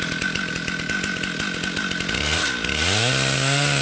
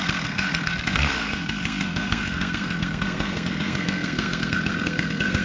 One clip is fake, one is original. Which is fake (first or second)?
second